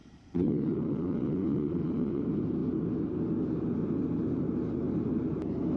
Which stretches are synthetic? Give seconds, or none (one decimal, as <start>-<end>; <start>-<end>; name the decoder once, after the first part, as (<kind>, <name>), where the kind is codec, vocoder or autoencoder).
0.0-2.2 (vocoder, Vocos)